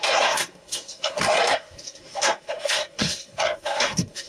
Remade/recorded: remade